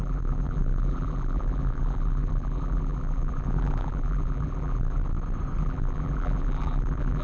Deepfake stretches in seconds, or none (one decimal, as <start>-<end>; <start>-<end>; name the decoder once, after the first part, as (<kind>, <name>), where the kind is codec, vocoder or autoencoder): 0.0-5.0 (vocoder, BigVGAN v2); 5.6-7.2